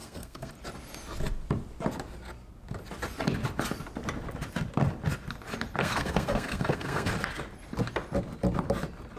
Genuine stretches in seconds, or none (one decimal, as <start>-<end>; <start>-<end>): 0.5-5.8; 7.1-9.2